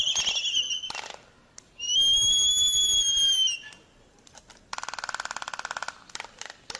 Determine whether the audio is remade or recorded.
recorded